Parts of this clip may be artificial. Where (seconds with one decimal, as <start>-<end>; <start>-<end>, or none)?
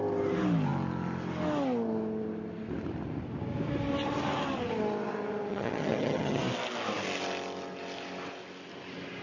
5.5-6.4